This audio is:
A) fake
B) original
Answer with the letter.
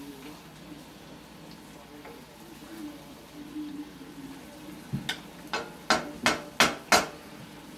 B